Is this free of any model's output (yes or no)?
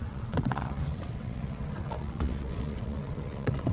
no